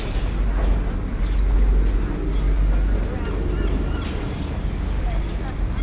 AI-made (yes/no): no